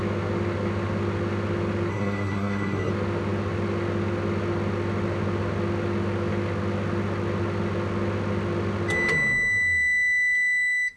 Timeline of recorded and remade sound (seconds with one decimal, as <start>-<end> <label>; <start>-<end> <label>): 0.0-1.9 recorded; 1.9-2.9 remade; 2.9-11.0 recorded